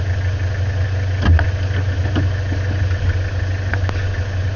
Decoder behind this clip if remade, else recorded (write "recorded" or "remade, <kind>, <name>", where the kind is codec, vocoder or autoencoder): recorded